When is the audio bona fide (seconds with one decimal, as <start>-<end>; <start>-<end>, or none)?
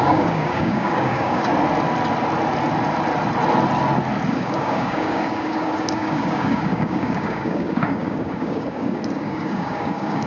1.5-4.3